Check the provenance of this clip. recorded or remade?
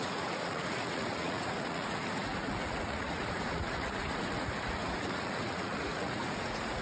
remade